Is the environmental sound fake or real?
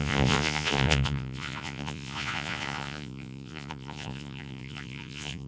fake